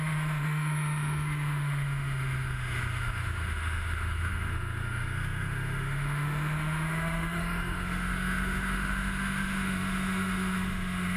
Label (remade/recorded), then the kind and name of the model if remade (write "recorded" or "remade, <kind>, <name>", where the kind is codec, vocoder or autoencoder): remade, autoencoder, DAC-VAE